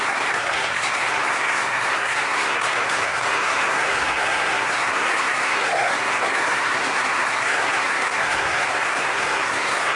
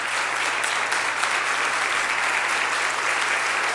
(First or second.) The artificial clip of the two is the first